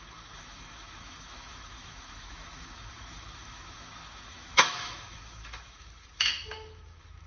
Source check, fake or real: fake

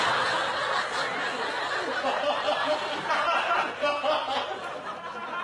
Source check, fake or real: real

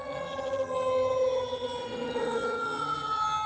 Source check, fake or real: fake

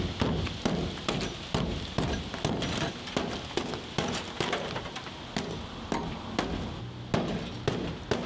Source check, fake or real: real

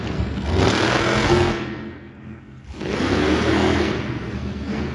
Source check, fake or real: fake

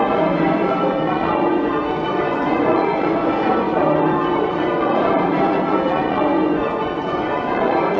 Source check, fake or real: fake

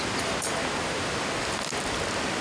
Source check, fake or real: real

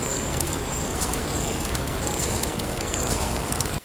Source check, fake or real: fake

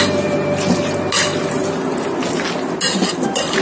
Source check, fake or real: real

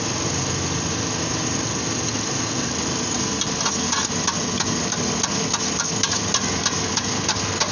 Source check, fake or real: real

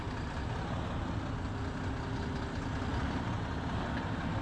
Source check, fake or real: real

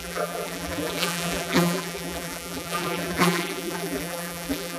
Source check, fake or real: fake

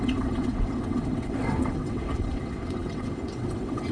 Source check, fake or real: fake